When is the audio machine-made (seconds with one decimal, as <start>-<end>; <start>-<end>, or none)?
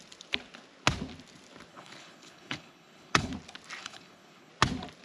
1.7-3.3; 3.8-4.5